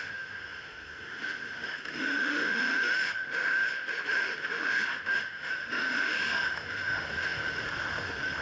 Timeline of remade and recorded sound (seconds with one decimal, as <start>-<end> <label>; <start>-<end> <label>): 0.0-8.4 remade